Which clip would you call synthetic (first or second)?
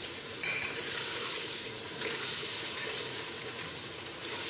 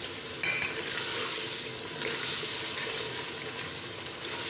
first